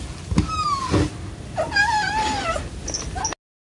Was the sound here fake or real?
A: real